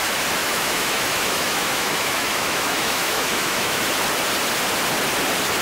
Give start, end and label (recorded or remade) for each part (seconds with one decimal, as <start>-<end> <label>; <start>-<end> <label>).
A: 0.0-0.4 recorded; 0.4-3.8 remade; 3.8-5.6 recorded